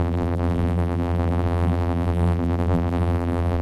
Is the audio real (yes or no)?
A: no